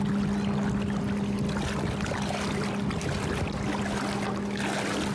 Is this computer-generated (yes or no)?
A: no